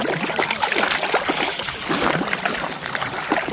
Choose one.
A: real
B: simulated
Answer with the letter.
A